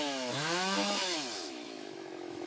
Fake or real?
fake